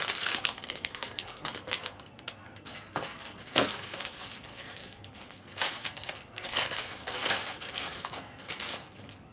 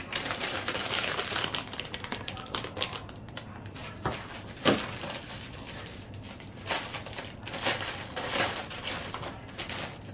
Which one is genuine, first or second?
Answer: second